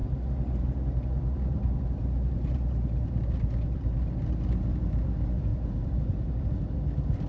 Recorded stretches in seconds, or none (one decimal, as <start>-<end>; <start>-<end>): 3.3-5.5; 6.3-7.3